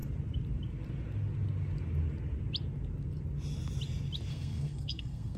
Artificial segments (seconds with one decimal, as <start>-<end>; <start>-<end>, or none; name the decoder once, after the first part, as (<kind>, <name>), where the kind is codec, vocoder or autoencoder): 4.3-5.4 (codec, SNAC)